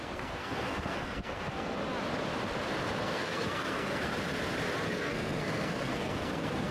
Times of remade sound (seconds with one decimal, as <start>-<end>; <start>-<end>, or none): 0.0-1.8; 3.0-4.1; 4.8-6.7